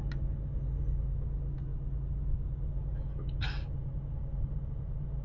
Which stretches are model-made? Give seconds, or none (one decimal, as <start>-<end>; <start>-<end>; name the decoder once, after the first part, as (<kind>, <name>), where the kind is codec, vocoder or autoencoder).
none